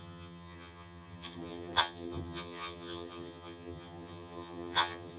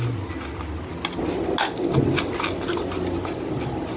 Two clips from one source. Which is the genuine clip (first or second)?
second